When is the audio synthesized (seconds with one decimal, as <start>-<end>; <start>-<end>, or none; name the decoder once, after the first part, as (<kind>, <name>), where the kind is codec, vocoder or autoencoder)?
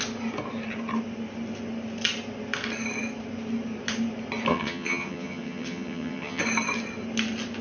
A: 4.5-6.4 (vocoder, HiFi-GAN)